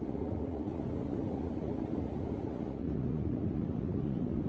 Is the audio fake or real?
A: fake